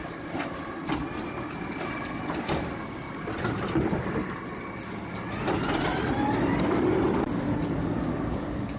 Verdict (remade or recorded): recorded